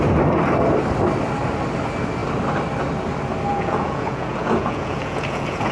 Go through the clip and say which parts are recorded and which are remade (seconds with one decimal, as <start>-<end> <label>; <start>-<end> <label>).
0.0-3.5 recorded; 3.5-5.7 remade